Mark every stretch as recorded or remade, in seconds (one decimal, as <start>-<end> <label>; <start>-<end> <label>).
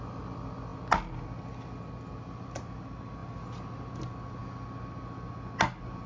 0.0-6.1 recorded